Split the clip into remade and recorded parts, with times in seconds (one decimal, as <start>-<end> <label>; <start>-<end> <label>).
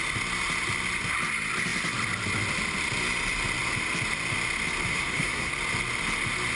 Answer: 0.0-4.9 recorded; 4.9-5.5 remade; 5.5-6.5 recorded